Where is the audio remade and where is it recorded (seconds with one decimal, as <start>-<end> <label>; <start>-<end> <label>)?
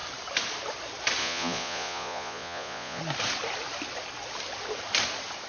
0.0-1.2 recorded; 1.2-3.0 remade; 3.0-5.5 recorded